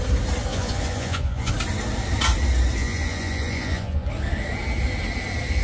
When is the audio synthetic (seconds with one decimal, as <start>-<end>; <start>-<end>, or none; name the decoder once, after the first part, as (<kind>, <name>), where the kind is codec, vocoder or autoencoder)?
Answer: 0.5-1.5 (vocoder, Vocos); 2.8-4.1